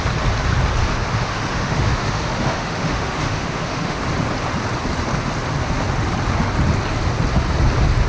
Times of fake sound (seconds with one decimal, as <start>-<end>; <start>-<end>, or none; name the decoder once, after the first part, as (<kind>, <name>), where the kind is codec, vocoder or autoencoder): 0.8-4.0 (autoencoder, DAC-VAE)